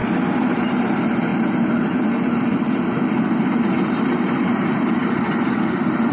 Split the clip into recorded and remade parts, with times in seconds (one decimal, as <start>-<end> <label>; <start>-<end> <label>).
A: 0.0-6.1 recorded